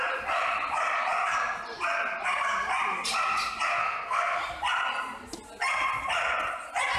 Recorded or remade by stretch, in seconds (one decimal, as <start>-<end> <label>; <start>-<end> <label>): 0.0-3.8 recorded; 3.8-4.4 remade; 4.4-7.0 recorded